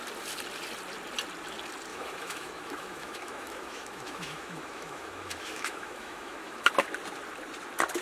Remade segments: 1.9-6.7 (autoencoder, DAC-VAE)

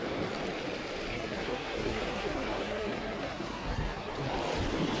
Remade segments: 1.1-4.1 (codec, SNAC)

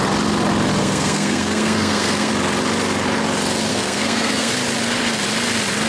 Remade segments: 0.8-2.3 (codec, SNAC); 3.7-4.5

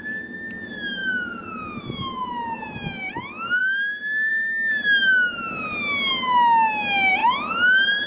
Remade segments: none